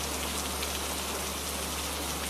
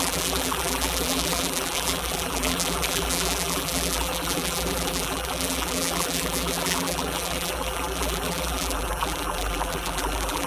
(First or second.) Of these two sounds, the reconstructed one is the second